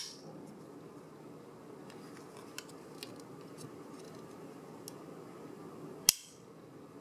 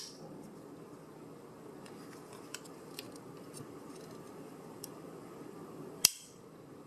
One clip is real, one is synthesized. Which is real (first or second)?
first